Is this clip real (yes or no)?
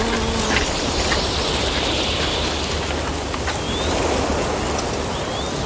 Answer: yes